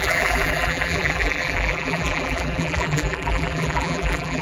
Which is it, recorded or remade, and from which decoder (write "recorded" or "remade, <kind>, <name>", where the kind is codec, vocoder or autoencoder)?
remade, vocoder, BigVGAN v2